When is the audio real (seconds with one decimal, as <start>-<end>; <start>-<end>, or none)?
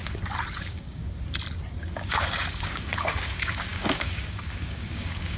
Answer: 0.0-0.6; 1.0-1.8